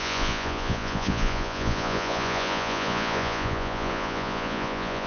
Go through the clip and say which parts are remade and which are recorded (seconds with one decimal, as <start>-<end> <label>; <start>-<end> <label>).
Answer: 0.0-5.1 remade